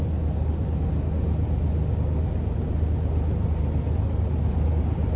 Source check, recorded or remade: recorded